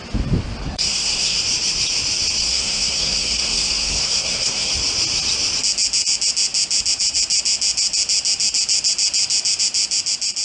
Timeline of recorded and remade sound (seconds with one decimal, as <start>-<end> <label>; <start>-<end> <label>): 0.0-0.6 recorded; 0.6-1.4 remade; 1.4-2.4 recorded; 2.4-4.7 remade; 4.7-10.4 recorded